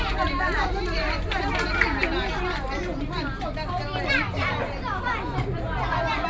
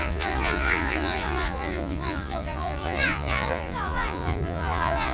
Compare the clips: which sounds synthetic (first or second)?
second